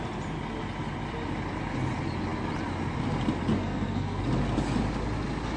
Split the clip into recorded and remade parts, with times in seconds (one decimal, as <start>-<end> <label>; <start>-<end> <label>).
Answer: 0.0-3.6 recorded; 3.6-4.2 remade; 4.2-5.6 recorded